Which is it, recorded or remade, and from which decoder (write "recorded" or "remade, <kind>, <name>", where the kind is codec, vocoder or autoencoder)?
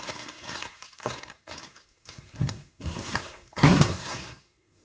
remade, codec, SNAC